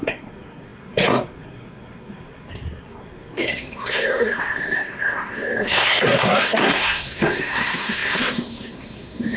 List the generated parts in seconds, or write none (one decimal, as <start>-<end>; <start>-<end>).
0.0-9.4